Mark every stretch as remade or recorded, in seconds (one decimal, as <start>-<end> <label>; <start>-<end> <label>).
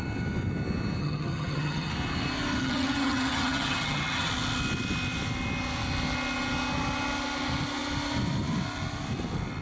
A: 0.0-1.0 recorded; 1.0-1.9 remade; 1.9-2.6 recorded; 2.6-4.3 remade; 4.3-9.6 recorded